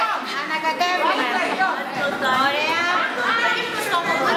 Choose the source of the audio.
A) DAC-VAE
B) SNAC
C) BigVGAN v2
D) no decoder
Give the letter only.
D